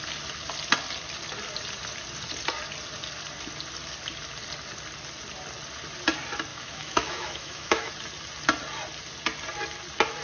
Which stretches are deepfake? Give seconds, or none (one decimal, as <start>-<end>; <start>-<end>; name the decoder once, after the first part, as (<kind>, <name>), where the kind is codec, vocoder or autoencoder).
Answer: 6.5-7.9 (autoencoder, DAC-VAE)